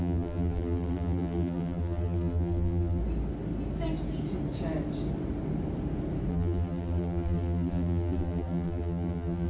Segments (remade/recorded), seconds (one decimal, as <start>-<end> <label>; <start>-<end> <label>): 0.0-3.0 remade; 3.0-6.3 recorded; 6.3-9.5 remade